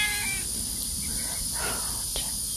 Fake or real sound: real